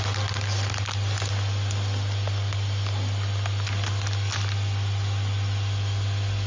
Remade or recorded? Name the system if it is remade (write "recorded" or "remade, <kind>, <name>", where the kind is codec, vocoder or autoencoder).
recorded